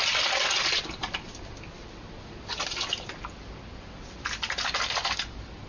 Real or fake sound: real